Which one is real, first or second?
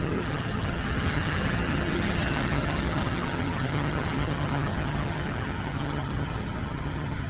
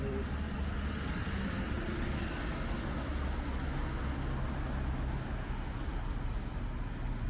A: second